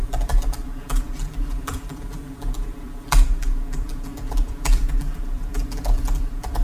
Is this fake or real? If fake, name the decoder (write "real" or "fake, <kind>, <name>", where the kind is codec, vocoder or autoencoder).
fake, vocoder, BigVGAN v2